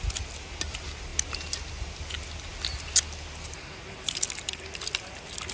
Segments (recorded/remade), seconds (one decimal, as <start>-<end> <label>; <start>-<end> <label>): 0.0-5.5 recorded